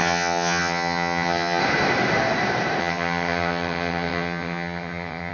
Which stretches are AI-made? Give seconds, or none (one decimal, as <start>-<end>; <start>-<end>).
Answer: 0.0-1.6; 2.8-5.3